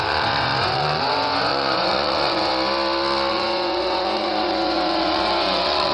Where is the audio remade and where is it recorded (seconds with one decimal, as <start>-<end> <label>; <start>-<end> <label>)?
0.0-2.5 remade; 2.5-3.3 recorded; 3.3-5.9 remade